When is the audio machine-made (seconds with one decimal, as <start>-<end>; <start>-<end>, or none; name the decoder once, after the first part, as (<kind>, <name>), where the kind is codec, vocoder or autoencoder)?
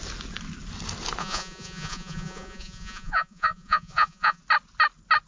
1.2-4.4 (vocoder, Vocos)